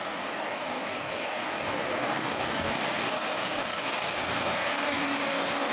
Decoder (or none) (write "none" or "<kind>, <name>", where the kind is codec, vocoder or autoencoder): codec, DAC